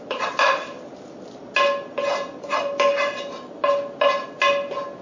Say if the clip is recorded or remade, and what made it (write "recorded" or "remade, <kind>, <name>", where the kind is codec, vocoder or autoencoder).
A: recorded